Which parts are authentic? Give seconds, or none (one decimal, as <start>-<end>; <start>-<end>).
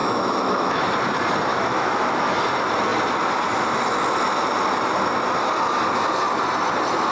0.8-1.5; 2.4-7.1